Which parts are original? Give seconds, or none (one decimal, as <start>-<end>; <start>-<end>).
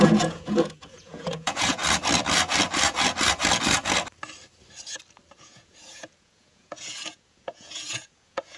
1.8-5.4